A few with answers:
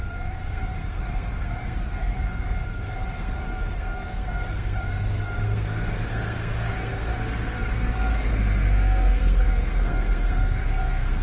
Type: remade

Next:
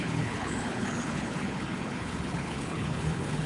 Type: remade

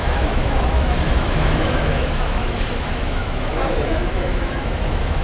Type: remade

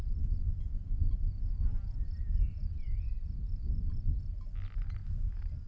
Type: recorded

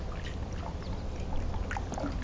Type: recorded